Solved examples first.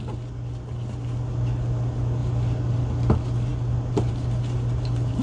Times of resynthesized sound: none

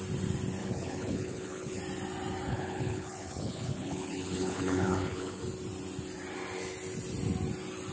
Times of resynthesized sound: 0.6-1.8 (codec, HILCodec); 2.5-5.4

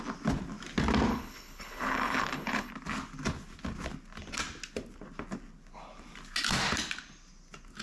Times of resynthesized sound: 1.1-2.7 (codec, HILCodec)

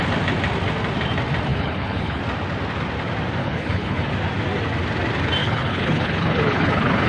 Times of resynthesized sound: 1.5-2.2 (codec, HILCodec); 3.4-4.1; 5.4-7.1

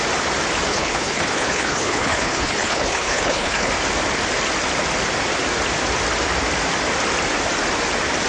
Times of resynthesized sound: 0.7-3.7 (codec, HILCodec)

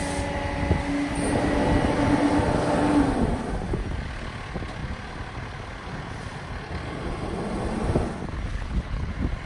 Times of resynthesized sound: 8.5-9.1 (codec, HILCodec)